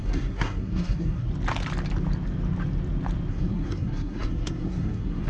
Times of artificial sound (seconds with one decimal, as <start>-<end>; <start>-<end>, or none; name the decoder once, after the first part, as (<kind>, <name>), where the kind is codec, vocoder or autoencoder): 0.0-1.3 (codec, SNAC); 3.3-5.3

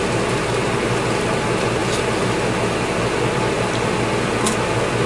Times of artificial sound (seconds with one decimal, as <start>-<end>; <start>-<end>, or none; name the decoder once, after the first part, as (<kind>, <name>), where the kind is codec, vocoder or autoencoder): none

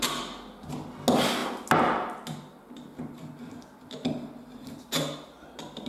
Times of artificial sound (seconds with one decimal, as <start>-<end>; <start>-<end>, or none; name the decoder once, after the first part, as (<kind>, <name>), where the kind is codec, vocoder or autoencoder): none